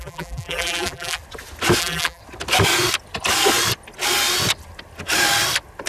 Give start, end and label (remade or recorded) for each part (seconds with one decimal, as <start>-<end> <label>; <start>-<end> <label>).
0.0-1.2 remade; 1.2-1.8 recorded; 1.8-2.2 remade; 2.2-5.9 recorded